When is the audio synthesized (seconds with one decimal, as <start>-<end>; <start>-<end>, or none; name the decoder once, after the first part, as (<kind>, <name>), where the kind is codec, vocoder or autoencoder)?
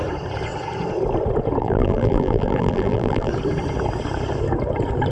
1.6-3.3 (vocoder, BigVGAN v2)